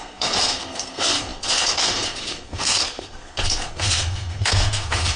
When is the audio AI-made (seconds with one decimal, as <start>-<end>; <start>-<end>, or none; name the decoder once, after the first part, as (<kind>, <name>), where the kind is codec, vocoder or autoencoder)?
0.0-5.2 (codec, SNAC)